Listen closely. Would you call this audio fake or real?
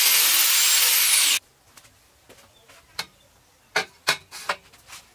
real